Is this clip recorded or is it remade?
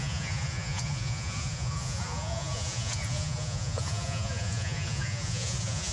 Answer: remade